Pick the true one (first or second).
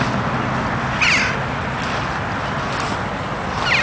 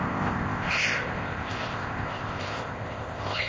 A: first